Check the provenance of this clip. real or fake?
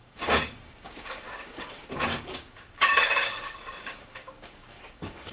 fake